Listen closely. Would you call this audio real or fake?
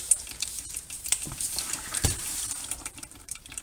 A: fake